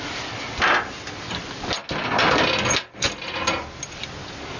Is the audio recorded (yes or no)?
yes